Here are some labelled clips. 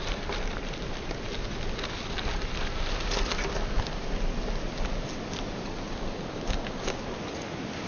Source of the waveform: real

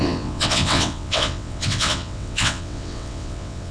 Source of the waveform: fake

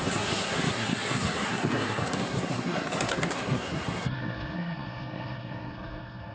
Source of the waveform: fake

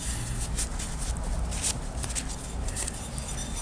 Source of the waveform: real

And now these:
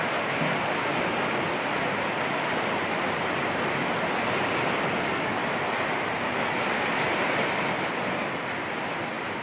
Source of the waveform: real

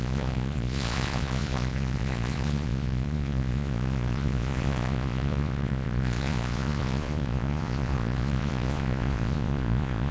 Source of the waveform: fake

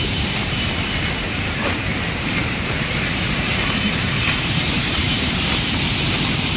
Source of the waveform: fake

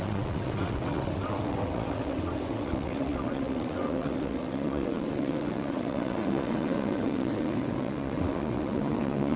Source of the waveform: fake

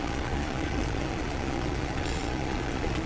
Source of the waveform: fake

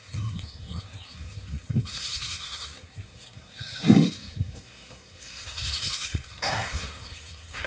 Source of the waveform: fake